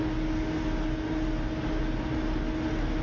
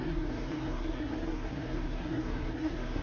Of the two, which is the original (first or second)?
first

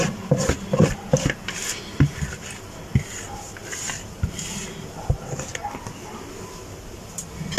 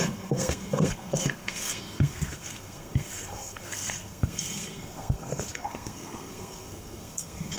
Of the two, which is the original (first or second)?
first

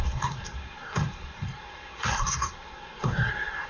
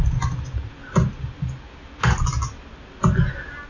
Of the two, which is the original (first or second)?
second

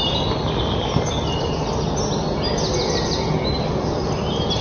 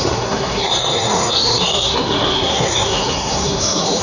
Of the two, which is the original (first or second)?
first